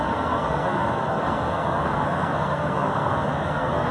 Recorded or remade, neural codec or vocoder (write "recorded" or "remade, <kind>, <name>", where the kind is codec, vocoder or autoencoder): remade, codec, SNAC